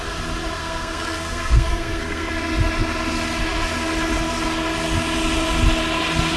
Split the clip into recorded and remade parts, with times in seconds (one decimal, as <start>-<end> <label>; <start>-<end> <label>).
0.0-0.6 recorded; 0.6-2.3 remade; 2.3-6.4 recorded